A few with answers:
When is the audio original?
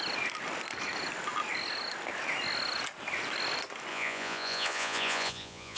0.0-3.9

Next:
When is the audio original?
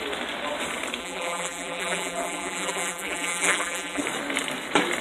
0.0-1.0; 4.0-5.0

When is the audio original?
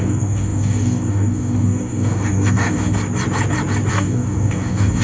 3.0-3.9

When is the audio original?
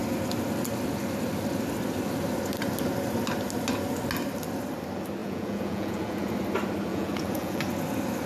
0.0-5.2; 6.3-6.9; 7.6-8.3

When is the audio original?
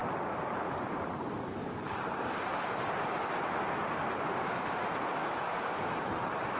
0.0-5.2; 6.0-6.6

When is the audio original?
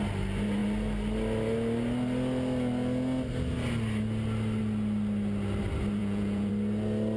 0.0-6.0; 6.5-7.2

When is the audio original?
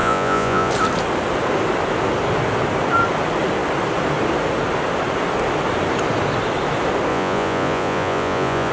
0.7-7.1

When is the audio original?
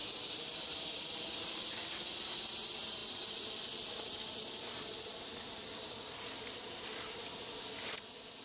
0.0-8.4